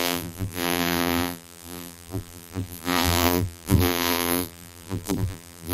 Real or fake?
fake